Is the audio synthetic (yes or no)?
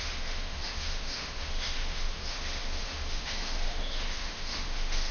yes